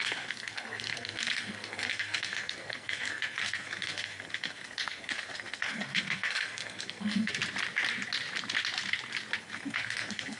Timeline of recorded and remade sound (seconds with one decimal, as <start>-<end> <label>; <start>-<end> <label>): 0.0-7.4 remade; 7.4-9.4 recorded; 9.4-10.4 remade